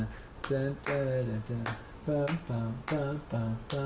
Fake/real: real